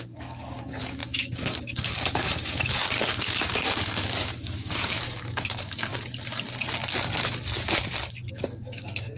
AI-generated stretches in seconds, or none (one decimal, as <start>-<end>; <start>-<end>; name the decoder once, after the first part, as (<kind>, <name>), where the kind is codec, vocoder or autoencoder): 0.0-5.9 (codec, DAC); 8.3-9.2